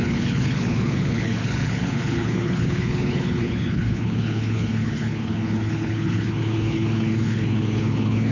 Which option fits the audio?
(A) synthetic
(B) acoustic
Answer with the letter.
A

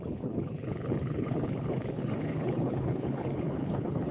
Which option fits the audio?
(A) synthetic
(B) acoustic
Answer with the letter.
A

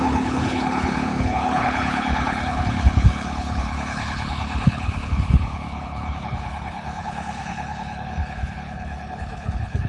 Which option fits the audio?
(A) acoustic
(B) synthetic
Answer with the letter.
B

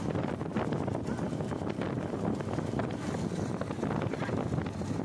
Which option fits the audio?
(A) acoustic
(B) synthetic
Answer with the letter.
A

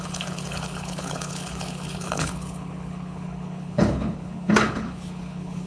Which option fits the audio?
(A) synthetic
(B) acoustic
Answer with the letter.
A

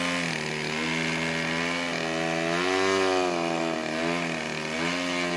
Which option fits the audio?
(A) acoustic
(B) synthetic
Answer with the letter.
A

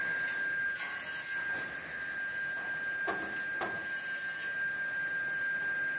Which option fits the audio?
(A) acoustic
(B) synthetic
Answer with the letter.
A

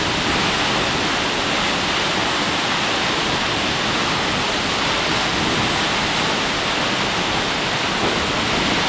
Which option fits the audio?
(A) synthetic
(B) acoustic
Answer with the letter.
B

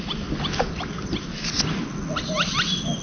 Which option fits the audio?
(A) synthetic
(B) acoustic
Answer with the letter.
B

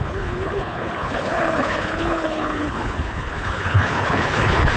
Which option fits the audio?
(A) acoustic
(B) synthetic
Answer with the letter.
B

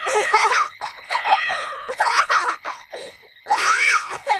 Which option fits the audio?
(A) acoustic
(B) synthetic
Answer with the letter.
B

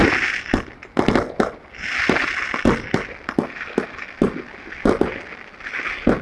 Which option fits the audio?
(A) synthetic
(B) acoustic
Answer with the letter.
B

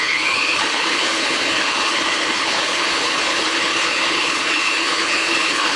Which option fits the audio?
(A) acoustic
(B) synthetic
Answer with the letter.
B